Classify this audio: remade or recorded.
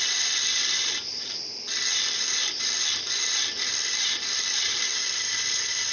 remade